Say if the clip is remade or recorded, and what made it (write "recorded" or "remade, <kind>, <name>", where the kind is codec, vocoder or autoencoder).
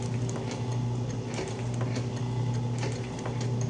recorded